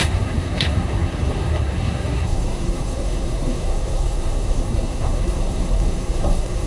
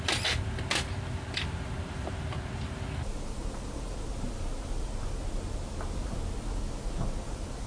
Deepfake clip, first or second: first